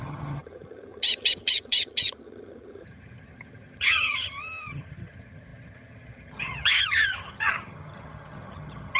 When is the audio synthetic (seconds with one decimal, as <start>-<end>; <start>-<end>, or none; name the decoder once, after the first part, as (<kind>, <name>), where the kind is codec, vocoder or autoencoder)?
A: 0.0-9.0 (vocoder, HiFi-GAN)